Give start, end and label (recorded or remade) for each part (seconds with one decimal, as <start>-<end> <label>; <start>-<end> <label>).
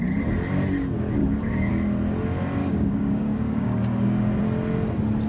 0.0-1.2 recorded; 1.2-1.7 remade; 1.7-2.6 recorded; 2.6-4.4 remade; 4.4-5.3 recorded